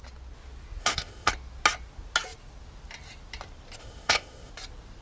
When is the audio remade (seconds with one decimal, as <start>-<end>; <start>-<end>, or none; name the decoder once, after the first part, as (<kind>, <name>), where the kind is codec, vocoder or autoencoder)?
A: 0.8-1.3 (codec, ZipCodec); 3.8-4.5